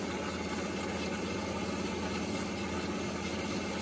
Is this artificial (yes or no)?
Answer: no